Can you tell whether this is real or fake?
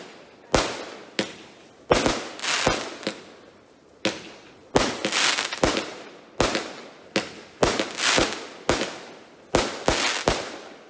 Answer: real